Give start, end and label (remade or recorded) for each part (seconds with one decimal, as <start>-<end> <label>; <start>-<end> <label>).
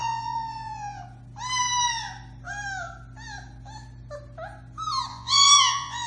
0.0-1.0 remade; 1.0-5.1 recorded; 5.1-6.1 remade